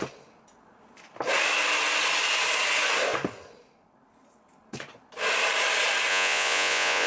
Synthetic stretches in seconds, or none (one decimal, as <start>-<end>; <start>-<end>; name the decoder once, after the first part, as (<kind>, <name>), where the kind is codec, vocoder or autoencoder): 6.1-7.1 (vocoder, Vocos)